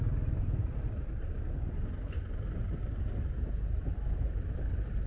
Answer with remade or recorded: recorded